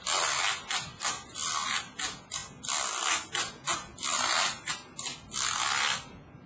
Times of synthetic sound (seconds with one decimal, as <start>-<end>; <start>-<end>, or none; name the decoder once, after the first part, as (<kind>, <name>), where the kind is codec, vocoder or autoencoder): none